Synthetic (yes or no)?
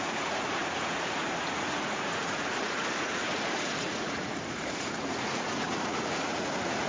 yes